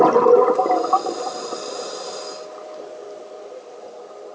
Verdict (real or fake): real